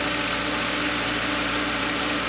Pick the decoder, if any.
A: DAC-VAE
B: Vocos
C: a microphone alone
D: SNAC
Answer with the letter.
C